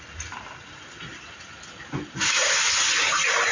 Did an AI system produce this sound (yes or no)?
no